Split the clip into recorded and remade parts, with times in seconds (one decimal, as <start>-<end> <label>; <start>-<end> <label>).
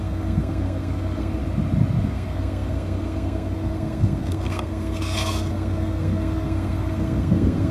0.0-1.4 remade; 1.4-2.0 recorded; 2.0-7.7 remade